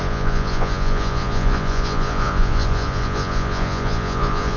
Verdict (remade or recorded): remade